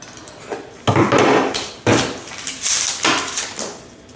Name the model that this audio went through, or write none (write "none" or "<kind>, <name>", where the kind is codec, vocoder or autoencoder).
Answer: none